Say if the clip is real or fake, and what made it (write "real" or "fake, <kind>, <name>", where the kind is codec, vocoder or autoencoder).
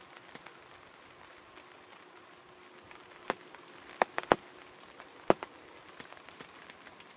real